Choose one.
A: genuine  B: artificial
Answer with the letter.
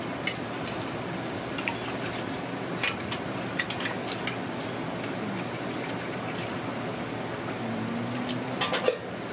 A